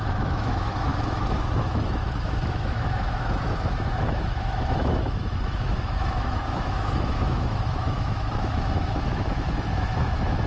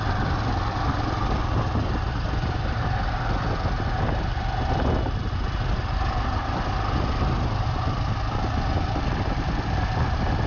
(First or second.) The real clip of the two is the second